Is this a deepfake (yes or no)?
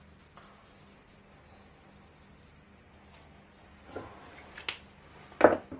no